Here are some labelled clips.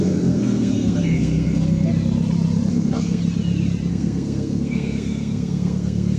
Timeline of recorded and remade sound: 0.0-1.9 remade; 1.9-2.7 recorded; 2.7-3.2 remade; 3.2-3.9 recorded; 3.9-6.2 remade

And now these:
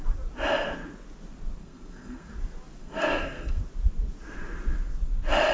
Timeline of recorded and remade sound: 0.0-1.6 recorded; 1.6-2.3 remade; 2.3-2.8 recorded; 2.8-3.6 remade; 3.6-5.5 recorded